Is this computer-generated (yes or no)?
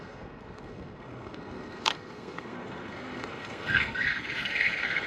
yes